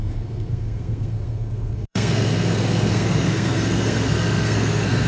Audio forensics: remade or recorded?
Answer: remade